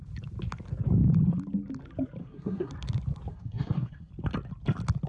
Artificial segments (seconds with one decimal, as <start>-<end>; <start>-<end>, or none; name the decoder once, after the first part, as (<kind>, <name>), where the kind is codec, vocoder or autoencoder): 2.2-2.7 (codec, SNAC); 3.3-4.1

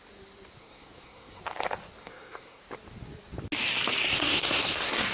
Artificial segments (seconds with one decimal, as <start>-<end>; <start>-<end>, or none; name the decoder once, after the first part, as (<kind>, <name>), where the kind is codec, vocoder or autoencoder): 0.6-1.4 (codec, SNAC); 2.0-2.6; 4.0-5.1

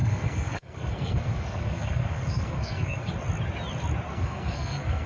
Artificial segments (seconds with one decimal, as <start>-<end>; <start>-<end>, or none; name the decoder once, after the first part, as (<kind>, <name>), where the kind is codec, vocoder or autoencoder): 0.0-3.1 (codec, SNAC); 4.1-5.1

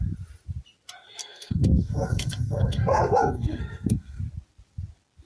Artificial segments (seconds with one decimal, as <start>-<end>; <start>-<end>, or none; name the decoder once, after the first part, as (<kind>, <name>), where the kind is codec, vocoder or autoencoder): 1.2-4.2 (codec, SNAC)

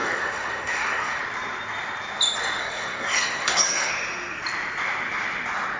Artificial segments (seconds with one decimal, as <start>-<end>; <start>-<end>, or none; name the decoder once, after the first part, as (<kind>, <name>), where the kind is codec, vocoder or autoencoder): 0.0-1.2 (codec, SNAC); 2.6-3.9

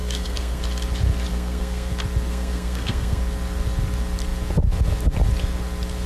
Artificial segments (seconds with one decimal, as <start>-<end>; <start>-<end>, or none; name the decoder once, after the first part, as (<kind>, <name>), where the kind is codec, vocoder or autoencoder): 0.0-0.6 (codec, SNAC); 1.3-1.9; 2.3-3.2